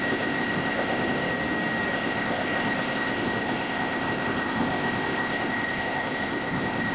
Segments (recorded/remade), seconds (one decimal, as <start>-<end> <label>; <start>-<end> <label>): 0.0-1.3 remade; 1.3-1.9 recorded; 1.9-6.9 remade